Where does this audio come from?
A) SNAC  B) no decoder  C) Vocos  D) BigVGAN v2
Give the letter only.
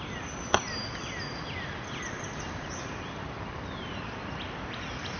D